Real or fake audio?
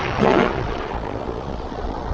fake